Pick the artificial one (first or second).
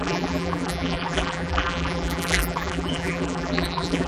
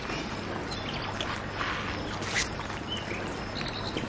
first